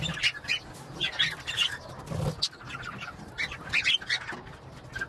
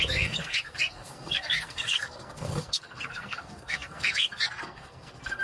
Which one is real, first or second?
first